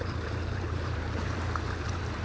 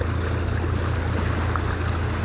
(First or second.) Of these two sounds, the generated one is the first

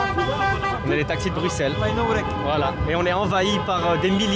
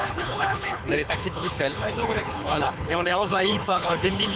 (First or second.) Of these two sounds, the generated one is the second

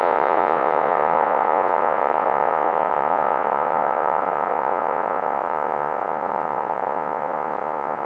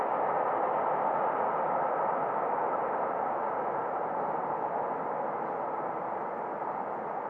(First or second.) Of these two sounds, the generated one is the first